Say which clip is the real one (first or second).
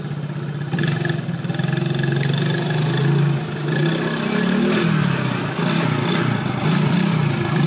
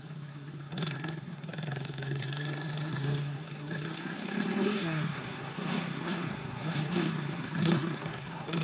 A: first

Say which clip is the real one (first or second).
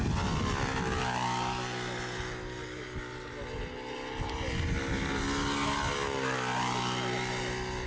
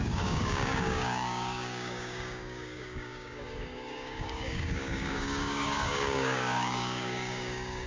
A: first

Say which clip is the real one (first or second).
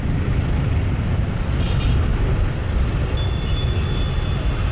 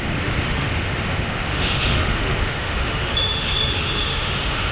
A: first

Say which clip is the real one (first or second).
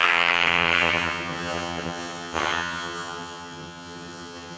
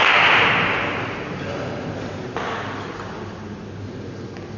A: second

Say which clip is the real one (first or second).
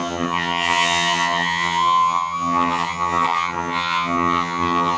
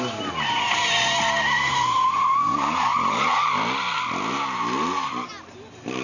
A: second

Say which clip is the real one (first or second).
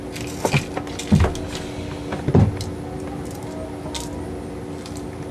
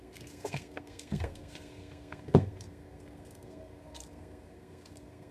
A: first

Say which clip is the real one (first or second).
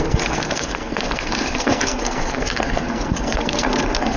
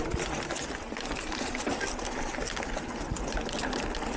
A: second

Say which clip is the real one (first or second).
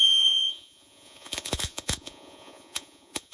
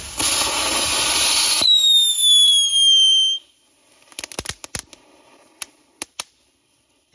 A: second